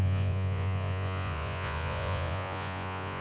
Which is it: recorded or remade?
remade